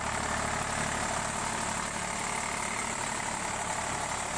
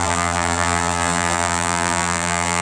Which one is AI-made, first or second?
second